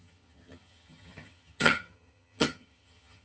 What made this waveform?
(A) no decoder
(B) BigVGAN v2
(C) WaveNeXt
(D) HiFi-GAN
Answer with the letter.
D